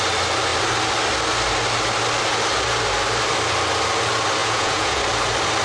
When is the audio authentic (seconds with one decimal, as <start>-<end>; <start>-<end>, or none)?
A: 0.0-4.4; 5.0-5.6

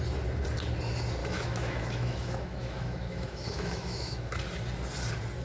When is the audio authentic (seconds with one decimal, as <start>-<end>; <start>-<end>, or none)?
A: 0.0-1.2; 4.4-5.4

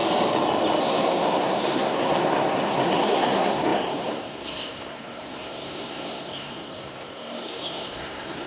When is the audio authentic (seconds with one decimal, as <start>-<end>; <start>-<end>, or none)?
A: 0.0-0.8

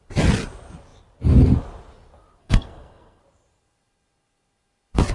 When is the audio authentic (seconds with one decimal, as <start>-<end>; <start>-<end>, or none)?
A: 0.0-2.4; 3.2-5.1

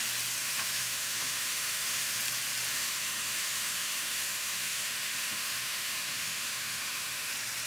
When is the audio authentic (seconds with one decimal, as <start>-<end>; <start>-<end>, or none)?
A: 0.0-0.4; 2.2-2.7; 7.3-7.7